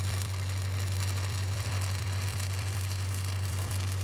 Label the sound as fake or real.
fake